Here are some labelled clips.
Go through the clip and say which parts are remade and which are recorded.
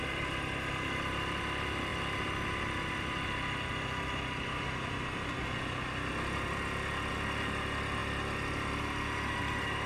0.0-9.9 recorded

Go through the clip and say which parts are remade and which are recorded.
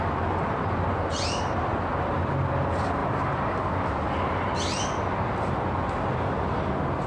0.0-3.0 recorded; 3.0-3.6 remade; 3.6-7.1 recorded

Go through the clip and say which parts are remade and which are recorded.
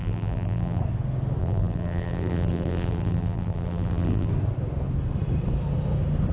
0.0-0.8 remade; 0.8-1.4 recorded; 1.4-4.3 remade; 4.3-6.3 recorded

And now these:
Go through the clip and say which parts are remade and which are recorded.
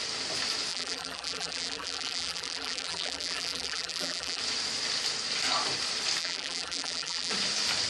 0.0-0.7 recorded; 0.7-4.4 remade; 4.4-6.2 recorded; 6.2-7.3 remade; 7.3-7.9 recorded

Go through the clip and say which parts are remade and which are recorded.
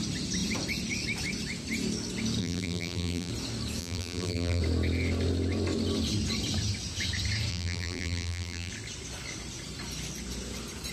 0.0-2.4 recorded; 2.4-3.3 remade; 3.3-3.8 recorded; 3.8-4.6 remade; 4.6-7.5 recorded; 7.5-8.7 remade; 8.7-10.9 recorded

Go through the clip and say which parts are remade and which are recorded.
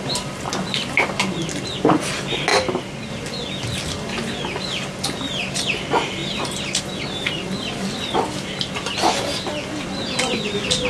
0.0-2.5 recorded; 2.5-3.1 remade; 3.1-6.2 recorded; 6.2-6.8 remade; 6.8-10.9 recorded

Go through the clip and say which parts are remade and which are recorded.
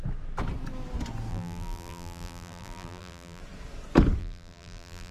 0.0-1.3 recorded; 1.3-3.4 remade; 3.4-4.2 recorded; 4.2-5.1 remade